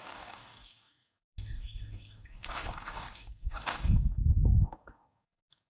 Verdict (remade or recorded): remade